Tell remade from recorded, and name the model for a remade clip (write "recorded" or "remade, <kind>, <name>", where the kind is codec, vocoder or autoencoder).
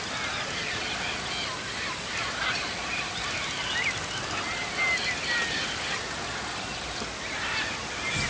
recorded